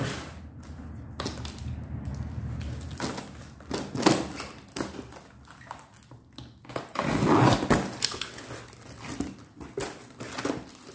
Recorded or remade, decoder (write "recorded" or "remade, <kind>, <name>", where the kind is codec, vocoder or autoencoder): recorded